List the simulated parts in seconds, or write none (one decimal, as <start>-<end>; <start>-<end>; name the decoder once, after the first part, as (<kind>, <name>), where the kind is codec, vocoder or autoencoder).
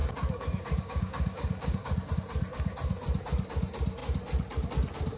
0.0-2.1 (codec, DAC)